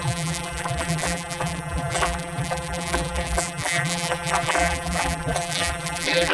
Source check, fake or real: fake